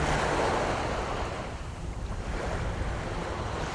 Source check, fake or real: fake